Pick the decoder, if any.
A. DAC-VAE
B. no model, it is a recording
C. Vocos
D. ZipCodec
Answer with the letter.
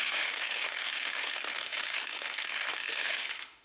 A